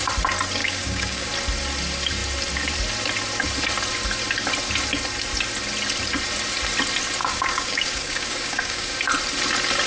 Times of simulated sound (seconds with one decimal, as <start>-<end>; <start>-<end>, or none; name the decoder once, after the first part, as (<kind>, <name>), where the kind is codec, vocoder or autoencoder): 0.6-1.3 (codec, DAC); 7.2-9.0